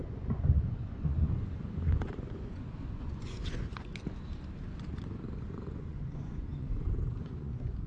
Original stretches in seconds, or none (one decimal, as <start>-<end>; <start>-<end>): 3.9-5.5